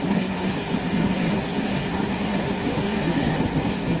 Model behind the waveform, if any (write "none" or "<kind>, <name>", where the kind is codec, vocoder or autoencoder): codec, SNAC